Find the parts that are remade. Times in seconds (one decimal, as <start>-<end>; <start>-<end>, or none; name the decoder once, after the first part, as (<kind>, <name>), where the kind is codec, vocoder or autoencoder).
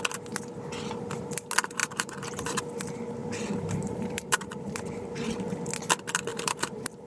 1.8-2.6 (vocoder, BigVGAN v2); 3.2-5.6; 6.3-7.1